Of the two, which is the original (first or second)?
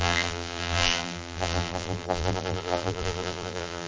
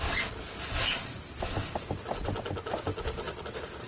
second